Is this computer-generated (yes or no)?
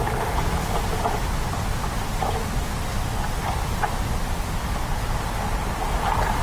no